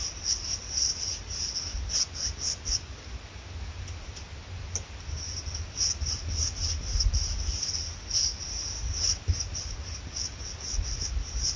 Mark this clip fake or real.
real